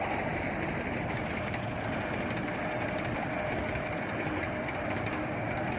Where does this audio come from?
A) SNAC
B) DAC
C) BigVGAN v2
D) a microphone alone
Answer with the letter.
D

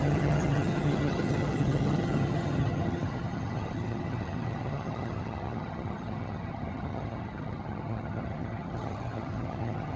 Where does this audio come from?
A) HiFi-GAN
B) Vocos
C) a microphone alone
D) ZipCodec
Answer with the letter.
A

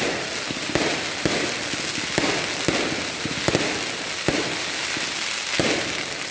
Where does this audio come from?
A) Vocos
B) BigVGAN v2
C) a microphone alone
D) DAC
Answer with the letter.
C